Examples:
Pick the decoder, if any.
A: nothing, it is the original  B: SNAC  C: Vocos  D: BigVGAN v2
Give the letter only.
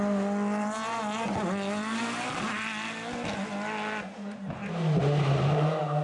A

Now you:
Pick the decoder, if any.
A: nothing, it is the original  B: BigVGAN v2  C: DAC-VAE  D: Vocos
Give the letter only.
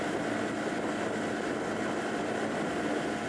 A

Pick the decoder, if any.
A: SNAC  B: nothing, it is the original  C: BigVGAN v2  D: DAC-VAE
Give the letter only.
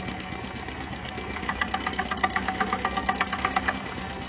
A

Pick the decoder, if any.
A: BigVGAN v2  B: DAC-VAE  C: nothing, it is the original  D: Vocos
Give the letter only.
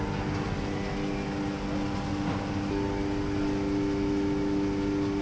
C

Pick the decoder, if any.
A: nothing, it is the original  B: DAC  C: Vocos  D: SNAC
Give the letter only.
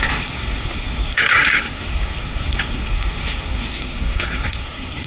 D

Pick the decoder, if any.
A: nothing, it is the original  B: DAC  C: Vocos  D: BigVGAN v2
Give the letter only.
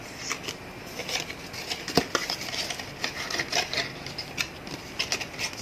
A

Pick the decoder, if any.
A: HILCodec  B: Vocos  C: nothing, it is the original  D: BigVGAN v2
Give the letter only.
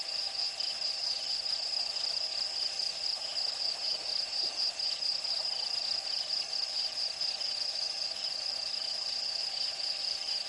C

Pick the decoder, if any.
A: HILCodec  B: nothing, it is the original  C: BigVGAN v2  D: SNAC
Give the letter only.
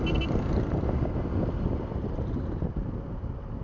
C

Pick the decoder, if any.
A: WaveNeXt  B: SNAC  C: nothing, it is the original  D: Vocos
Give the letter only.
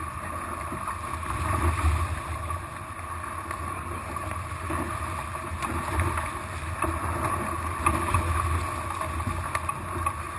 C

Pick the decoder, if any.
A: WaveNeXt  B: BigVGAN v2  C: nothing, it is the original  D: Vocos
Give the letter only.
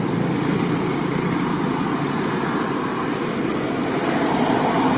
C